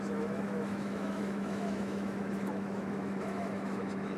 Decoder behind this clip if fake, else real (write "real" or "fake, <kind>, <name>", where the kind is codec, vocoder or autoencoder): fake, autoencoder, DAC-VAE